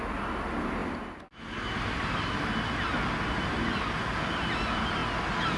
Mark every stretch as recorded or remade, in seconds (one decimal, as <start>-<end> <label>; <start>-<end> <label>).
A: 0.0-5.6 recorded